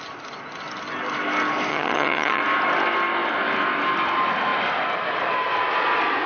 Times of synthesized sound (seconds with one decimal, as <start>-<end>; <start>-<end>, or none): 1.7-2.4